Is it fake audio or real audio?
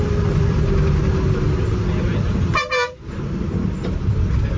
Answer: real